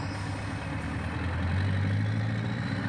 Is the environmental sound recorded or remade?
recorded